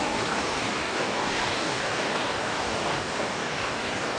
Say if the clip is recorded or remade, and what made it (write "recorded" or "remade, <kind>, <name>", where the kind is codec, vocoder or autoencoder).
remade, codec, DAC